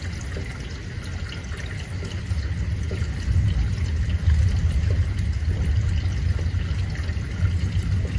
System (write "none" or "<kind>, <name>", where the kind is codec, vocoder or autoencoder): none